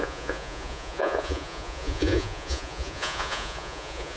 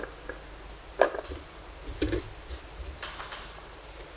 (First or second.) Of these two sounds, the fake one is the first